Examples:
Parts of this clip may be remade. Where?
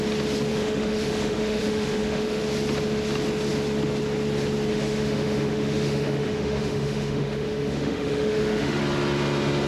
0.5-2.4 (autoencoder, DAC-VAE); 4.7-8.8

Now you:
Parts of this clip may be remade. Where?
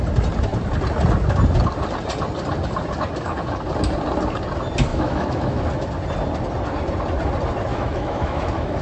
4.9-5.6 (autoencoder, DAC-VAE); 7.7-8.8